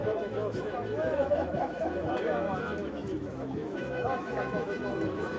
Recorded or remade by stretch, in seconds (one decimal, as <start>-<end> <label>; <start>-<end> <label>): 0.0-5.4 remade